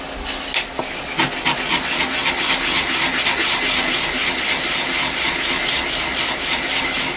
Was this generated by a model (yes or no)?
no